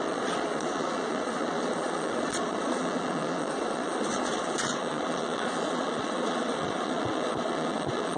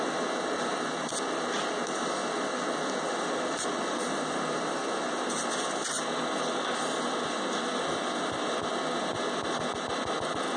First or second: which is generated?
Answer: first